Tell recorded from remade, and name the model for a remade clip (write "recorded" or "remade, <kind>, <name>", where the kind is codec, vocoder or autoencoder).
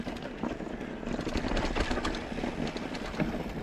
recorded